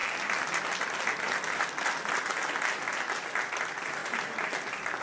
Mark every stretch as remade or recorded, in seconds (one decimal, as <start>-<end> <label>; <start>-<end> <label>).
0.0-4.0 recorded; 4.0-4.5 remade; 4.5-5.0 recorded